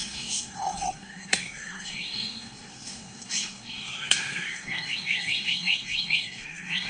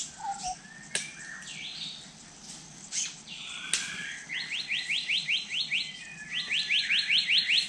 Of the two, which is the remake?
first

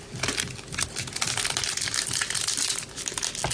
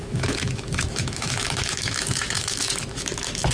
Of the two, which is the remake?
second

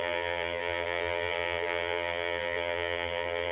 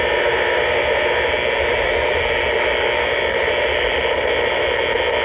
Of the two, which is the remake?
first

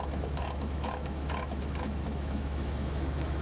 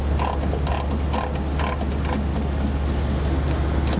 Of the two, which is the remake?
first